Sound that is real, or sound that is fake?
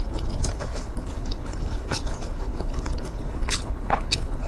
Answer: fake